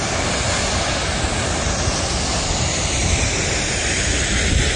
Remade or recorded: recorded